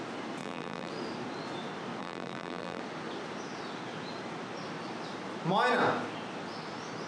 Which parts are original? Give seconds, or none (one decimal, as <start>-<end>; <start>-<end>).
0.0-0.4; 0.9-2.0; 2.8-7.1